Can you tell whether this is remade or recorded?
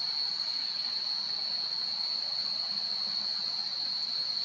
recorded